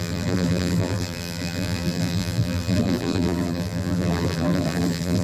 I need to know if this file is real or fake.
fake